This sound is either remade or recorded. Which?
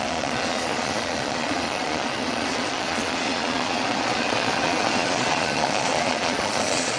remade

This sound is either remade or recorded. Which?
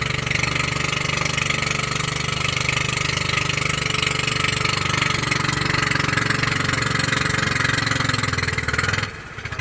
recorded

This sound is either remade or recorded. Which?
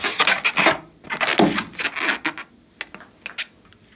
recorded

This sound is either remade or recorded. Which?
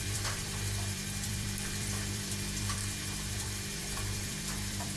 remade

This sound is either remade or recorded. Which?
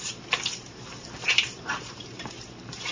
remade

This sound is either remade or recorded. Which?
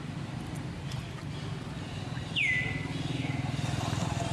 recorded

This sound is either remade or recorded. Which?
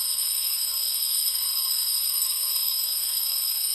remade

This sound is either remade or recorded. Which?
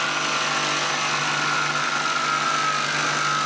recorded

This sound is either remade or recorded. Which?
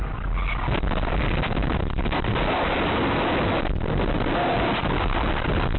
recorded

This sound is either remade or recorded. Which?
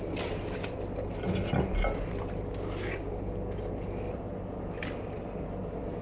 recorded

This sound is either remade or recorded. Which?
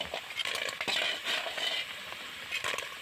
recorded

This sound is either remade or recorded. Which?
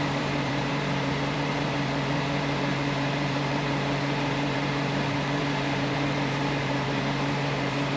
remade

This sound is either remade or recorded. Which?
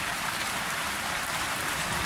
remade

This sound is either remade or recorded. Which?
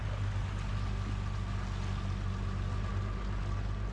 recorded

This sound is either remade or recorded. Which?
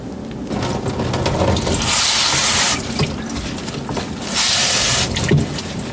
recorded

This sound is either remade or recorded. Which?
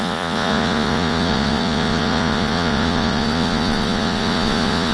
remade